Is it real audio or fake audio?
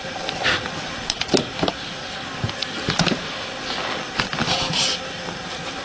real